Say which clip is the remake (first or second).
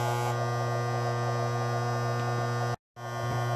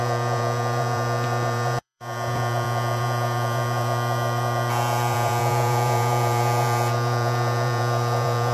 second